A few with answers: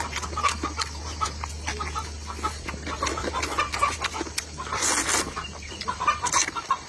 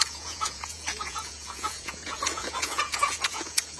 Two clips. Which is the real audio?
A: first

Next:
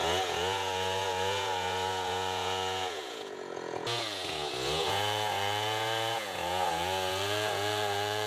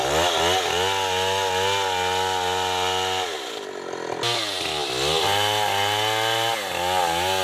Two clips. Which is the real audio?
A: second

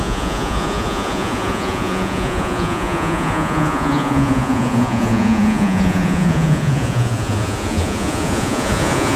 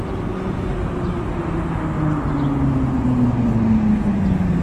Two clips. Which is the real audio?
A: second